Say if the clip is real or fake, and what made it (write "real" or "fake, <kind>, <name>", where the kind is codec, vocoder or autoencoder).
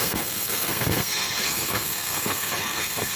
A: fake, codec, SNAC